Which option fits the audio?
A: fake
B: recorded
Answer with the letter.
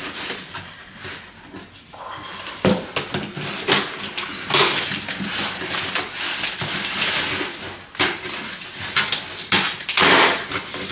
B